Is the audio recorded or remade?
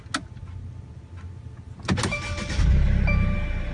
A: recorded